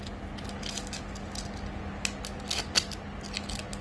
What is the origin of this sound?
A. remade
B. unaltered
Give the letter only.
B